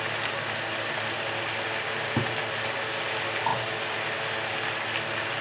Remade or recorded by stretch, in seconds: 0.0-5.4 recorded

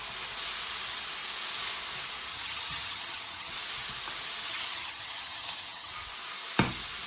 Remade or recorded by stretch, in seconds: 0.0-2.3 recorded; 2.3-3.5 remade; 3.5-4.4 recorded; 4.4-5.9 remade; 5.9-7.1 recorded

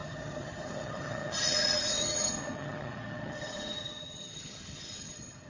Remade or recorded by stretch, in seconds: 0.0-5.5 remade

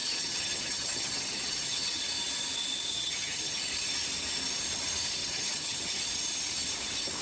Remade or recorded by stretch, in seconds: 0.0-2.0 remade; 2.0-2.9 recorded; 2.9-3.6 remade; 3.6-5.2 recorded; 5.2-6.0 remade; 6.0-7.2 recorded

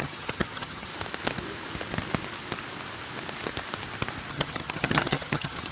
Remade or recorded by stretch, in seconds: 0.0-0.9 remade; 0.9-4.3 recorded; 4.3-5.7 remade

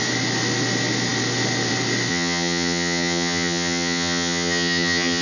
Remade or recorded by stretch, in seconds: 0.0-2.1 recorded; 2.1-5.2 remade

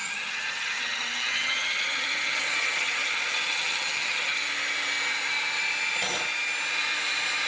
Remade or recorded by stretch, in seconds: 0.0-4.4 remade; 4.4-7.5 recorded